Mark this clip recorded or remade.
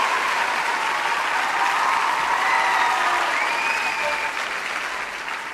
recorded